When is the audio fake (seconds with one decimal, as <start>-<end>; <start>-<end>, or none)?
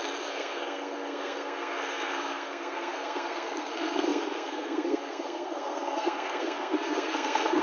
0.0-7.6